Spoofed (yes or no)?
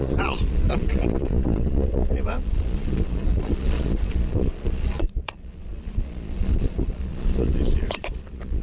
yes